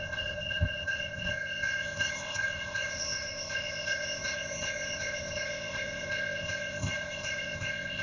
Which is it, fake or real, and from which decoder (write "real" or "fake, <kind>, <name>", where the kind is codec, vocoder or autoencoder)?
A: fake, codec, ZipCodec